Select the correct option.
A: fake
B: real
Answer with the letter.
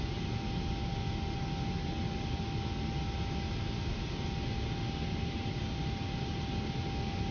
B